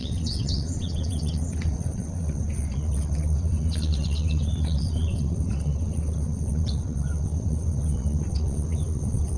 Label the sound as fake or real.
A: fake